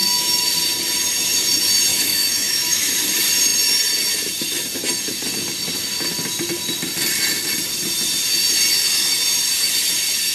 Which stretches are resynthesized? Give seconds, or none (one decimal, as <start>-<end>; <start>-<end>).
0.0-0.5; 1.9-2.9